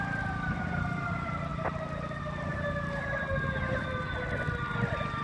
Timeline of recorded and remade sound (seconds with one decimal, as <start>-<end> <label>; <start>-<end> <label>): 0.0-5.2 recorded